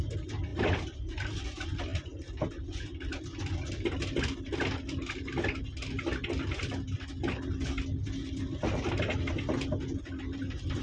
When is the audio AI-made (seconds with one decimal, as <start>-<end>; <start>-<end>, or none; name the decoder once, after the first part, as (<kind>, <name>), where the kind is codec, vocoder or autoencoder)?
none